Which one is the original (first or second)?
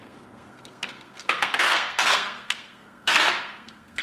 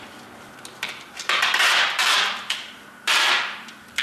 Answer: second